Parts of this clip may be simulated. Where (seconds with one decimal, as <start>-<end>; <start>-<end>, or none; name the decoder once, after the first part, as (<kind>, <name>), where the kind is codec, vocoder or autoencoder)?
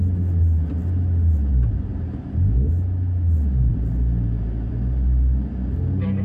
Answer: none